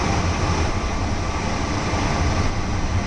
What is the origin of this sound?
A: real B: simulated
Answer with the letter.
A